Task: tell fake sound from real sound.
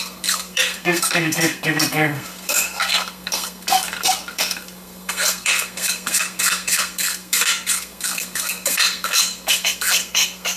fake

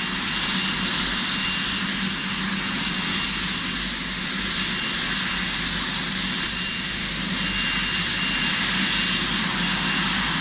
real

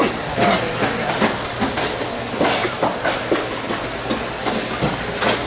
real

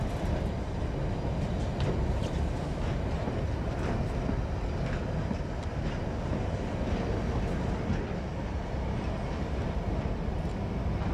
real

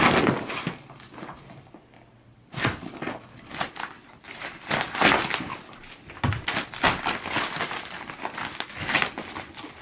real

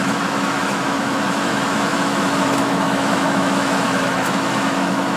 fake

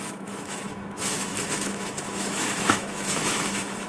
fake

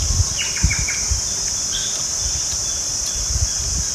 fake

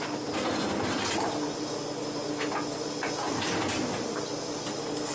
real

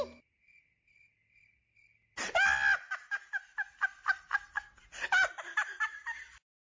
real